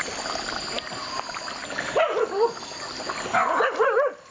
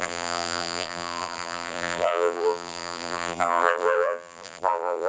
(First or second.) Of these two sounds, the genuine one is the first